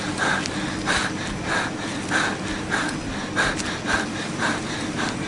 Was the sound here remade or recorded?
recorded